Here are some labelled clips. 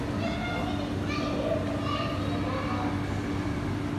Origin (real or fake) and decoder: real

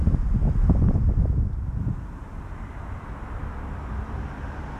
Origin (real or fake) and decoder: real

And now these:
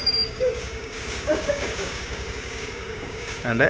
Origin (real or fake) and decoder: fake, codec, DAC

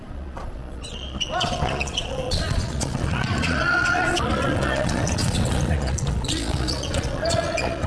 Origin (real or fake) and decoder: fake, vocoder, Vocos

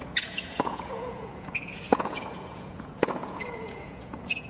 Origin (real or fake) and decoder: fake, vocoder, Vocos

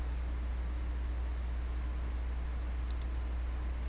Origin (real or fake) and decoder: real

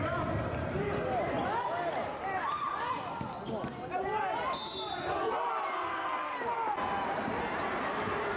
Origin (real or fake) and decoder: real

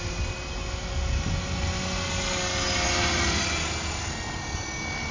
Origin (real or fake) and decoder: real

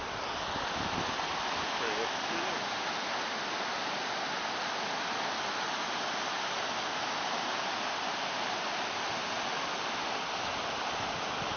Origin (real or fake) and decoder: real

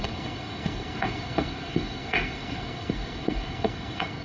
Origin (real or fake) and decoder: fake, codec, SNAC